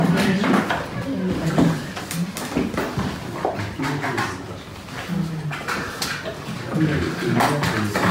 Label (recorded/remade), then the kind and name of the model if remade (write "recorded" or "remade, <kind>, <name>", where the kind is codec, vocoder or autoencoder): recorded